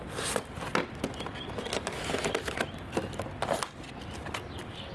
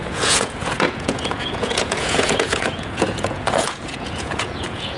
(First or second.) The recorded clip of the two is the first